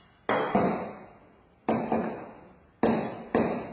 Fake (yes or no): no